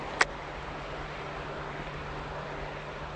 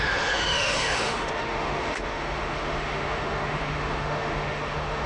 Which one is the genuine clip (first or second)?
first